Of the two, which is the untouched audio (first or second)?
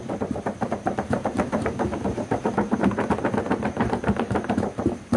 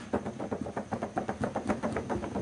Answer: second